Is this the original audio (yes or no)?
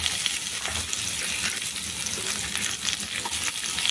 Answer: yes